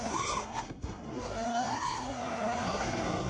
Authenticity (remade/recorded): remade